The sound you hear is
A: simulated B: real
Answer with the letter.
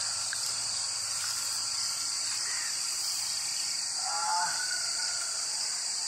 A